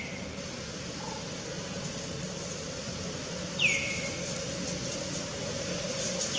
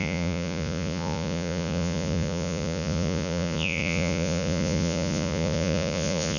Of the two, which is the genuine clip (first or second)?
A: first